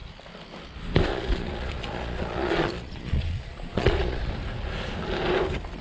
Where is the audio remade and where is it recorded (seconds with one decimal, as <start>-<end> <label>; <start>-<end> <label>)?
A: 0.0-1.1 recorded; 1.1-4.3 remade; 4.3-5.8 recorded